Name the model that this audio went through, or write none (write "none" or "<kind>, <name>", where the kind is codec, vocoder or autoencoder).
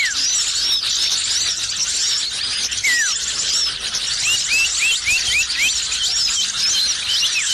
none